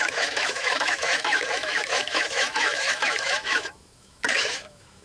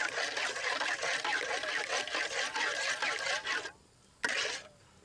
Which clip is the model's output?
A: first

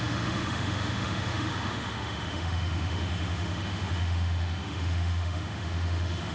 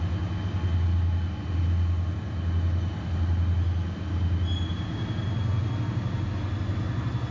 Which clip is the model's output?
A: first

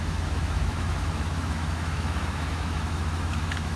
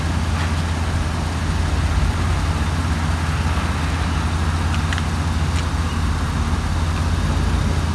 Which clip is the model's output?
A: first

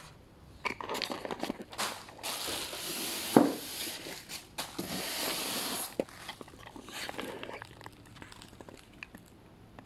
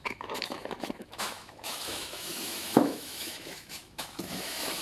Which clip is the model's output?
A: second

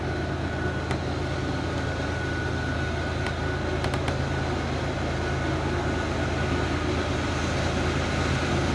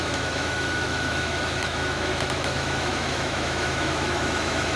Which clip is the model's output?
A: second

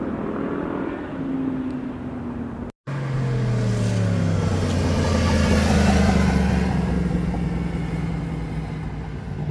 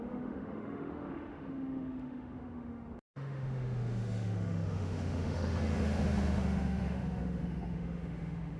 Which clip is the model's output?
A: second